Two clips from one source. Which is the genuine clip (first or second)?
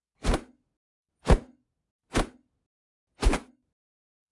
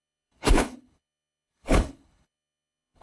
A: first